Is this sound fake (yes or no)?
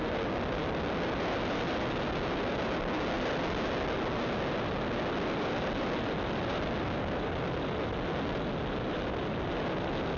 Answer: no